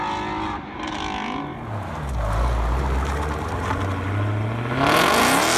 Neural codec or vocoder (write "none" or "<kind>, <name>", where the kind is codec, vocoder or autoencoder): none